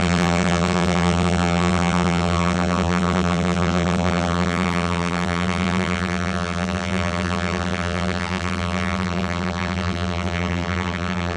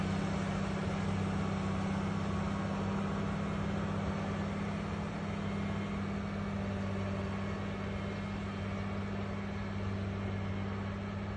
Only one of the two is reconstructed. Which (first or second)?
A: first